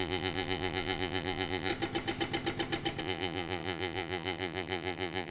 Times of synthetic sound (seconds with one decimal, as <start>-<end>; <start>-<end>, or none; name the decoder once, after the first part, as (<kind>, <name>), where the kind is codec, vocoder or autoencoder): 0.0-1.7 (vocoder, BigVGAN v2); 3.0-5.3

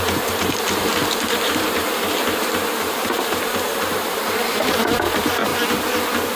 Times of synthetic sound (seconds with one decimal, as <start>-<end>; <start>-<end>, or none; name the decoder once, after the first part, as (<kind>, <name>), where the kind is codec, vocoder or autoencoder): 0.0-5.5 (vocoder, BigVGAN v2)

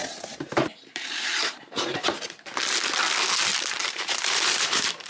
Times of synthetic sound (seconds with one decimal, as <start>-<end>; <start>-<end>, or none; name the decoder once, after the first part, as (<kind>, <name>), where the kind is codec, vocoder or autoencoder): 0.0-2.0 (vocoder, BigVGAN v2); 3.5-5.1

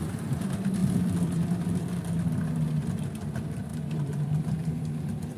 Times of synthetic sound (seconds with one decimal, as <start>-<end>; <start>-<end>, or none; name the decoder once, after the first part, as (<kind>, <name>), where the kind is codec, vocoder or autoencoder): 0.8-2.0 (vocoder, BigVGAN v2)

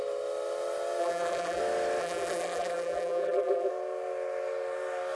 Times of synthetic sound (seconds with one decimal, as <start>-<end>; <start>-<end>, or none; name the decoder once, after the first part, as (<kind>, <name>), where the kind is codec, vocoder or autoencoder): 1.0-1.6 (vocoder, BigVGAN v2); 2.0-3.7

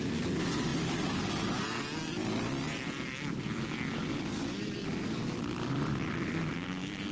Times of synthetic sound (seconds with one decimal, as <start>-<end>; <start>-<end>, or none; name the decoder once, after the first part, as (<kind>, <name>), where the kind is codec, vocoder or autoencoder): 0.0-0.7 (vocoder, BigVGAN v2); 2.8-7.1

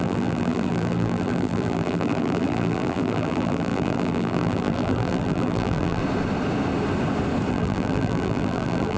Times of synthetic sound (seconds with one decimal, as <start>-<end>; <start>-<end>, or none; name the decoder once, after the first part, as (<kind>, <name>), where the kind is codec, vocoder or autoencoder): 0.0-6.0 (vocoder, BigVGAN v2); 7.5-9.0

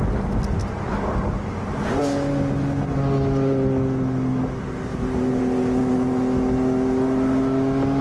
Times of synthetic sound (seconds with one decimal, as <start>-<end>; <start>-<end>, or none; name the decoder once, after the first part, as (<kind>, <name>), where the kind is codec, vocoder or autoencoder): 4.9-5.4 (vocoder, BigVGAN v2)